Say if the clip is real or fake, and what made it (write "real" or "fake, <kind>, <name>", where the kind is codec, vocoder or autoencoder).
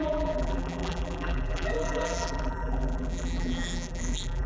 fake, vocoder, BigVGAN v2